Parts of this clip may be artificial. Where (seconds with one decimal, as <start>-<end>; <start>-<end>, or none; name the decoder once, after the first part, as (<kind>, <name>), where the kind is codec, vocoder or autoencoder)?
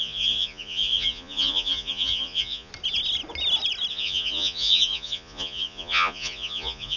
0.0-2.7 (vocoder, Vocos); 3.9-7.0